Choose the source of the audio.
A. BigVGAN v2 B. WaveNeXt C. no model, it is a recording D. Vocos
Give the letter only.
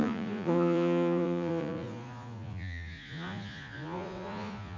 D